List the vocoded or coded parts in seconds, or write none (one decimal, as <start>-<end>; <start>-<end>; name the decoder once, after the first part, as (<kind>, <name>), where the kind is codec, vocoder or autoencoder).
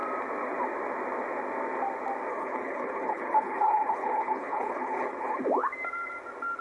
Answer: 2.3-5.4 (codec, HILCodec)